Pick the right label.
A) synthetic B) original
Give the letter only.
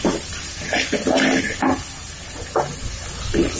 B